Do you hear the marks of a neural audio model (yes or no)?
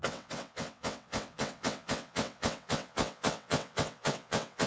yes